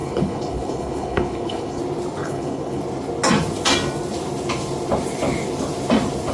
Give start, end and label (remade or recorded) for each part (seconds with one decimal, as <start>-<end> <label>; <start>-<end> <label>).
0.0-1.8 remade; 1.8-2.2 recorded; 2.2-2.8 remade; 2.8-6.3 recorded